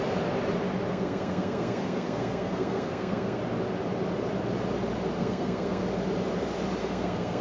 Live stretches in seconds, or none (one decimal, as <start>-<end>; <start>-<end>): 0.0-0.9; 3.4-5.2; 5.8-6.8